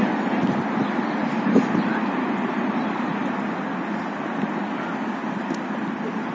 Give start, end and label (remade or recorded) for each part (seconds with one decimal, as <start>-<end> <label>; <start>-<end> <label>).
0.0-1.2 recorded; 1.2-3.2 remade; 3.2-6.3 recorded